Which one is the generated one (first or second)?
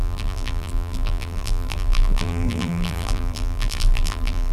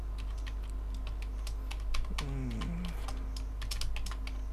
first